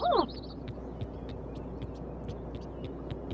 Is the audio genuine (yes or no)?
yes